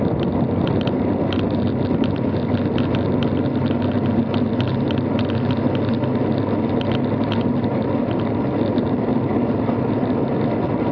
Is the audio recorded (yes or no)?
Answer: yes